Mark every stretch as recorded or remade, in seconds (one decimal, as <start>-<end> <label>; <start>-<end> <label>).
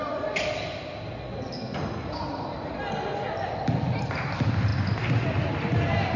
0.0-6.2 recorded